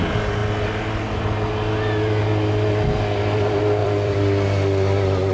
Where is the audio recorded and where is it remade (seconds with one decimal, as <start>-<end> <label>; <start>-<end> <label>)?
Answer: 0.0-3.8 recorded; 3.8-5.3 remade